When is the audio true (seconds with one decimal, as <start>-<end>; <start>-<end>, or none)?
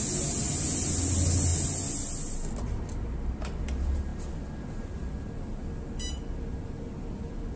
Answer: 0.0-7.6